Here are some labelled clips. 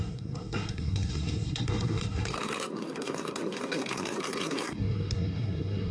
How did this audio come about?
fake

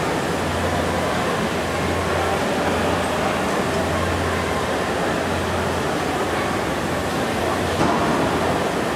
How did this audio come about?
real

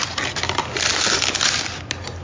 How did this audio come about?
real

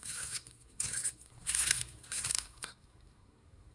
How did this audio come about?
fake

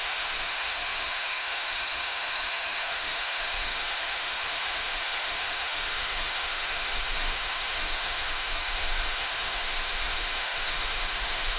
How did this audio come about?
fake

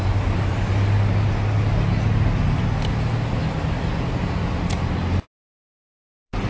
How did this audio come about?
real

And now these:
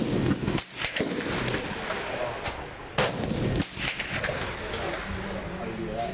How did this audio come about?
real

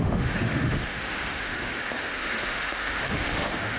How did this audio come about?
fake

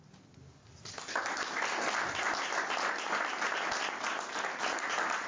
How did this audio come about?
real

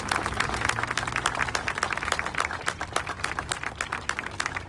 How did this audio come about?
real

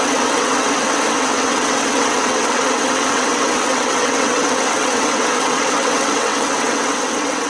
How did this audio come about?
fake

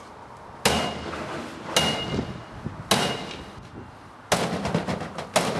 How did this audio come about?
real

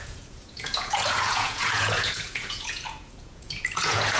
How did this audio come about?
fake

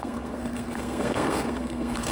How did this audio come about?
fake